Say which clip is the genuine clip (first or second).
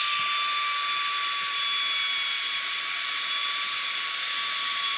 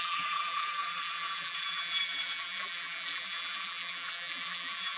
first